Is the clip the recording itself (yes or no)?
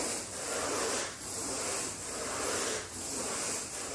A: yes